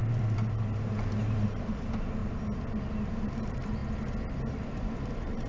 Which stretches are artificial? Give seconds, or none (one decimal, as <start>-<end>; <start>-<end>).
0.0-2.2; 3.1-3.8; 4.5-5.5

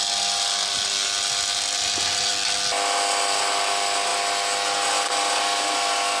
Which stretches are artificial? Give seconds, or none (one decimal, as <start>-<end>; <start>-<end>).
none

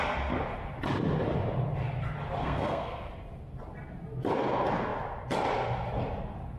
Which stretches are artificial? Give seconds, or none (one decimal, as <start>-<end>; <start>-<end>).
2.4-3.1

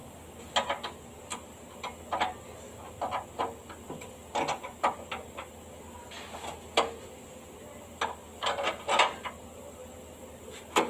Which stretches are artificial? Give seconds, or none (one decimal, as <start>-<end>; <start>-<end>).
none

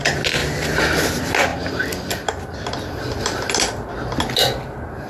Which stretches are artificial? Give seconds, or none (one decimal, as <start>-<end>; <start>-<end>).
none

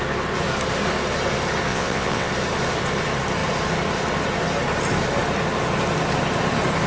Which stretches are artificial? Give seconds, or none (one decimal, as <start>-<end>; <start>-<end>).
1.7-2.3

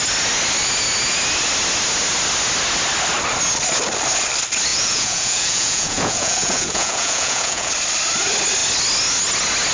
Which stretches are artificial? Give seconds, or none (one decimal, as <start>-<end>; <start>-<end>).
4.7-7.7

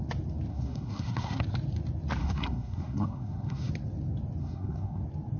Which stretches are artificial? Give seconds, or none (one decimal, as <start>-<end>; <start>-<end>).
0.5-1.4; 2.2-3.7; 4.4-5.0